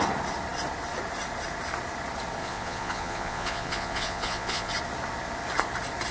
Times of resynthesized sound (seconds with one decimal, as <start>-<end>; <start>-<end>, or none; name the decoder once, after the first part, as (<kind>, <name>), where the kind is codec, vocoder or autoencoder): 2.4-4.7 (vocoder, Vocos)